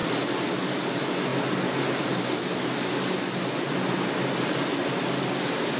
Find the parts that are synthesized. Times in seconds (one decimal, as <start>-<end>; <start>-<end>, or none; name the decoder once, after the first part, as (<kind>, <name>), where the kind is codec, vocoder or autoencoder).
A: none